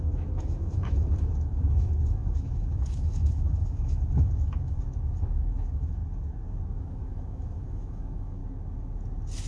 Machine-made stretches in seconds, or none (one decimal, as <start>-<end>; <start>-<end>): 0.0-6.0; 6.8-8.4